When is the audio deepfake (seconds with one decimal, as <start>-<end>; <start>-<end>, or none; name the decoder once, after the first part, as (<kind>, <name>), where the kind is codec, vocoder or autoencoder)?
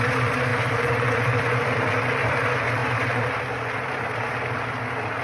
0.5-1.4 (vocoder, BigVGAN v2); 2.8-3.4